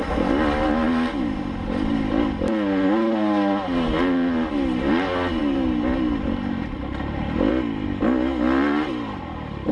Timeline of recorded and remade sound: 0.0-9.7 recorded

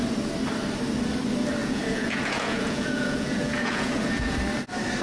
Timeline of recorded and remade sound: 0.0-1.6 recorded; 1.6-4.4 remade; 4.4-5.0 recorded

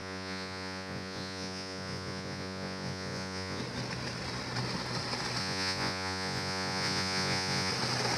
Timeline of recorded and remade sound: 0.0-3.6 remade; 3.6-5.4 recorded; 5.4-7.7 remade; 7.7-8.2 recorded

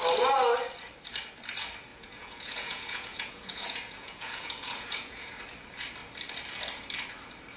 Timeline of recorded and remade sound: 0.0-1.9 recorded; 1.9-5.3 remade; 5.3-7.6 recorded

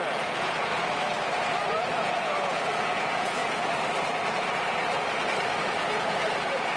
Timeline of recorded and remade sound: 0.0-0.7 remade; 0.7-1.7 recorded; 1.7-3.4 remade; 3.4-5.6 recorded; 5.6-6.8 remade

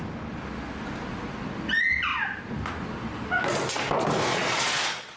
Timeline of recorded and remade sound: 0.0-4.3 recorded; 4.3-5.2 remade

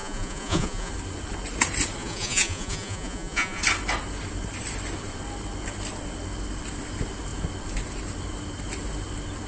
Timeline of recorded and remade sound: 0.0-0.9 remade; 0.9-2.0 recorded; 2.0-3.6 remade; 3.6-9.5 recorded

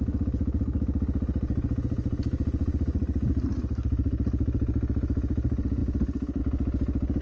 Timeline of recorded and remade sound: 0.0-7.2 recorded